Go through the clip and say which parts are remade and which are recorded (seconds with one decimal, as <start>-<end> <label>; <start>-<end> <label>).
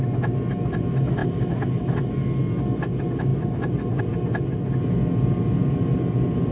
0.0-6.5 recorded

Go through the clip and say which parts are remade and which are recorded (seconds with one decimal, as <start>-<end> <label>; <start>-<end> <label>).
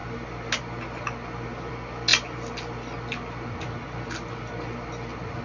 0.0-5.4 recorded